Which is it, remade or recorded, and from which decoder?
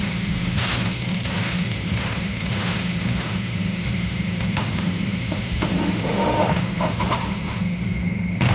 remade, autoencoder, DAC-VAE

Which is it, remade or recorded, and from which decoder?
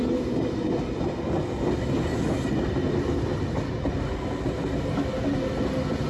recorded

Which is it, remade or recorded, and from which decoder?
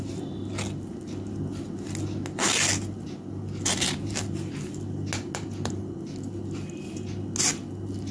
recorded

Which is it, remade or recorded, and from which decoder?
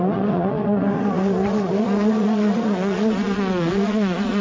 remade, vocoder, Vocos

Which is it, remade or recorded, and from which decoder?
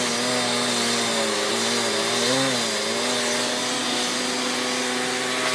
recorded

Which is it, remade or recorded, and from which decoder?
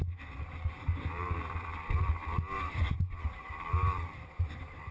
remade, vocoder, BigVGAN v2